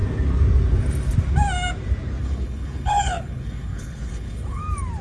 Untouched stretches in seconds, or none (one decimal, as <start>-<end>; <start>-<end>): 0.0-2.2; 4.6-5.0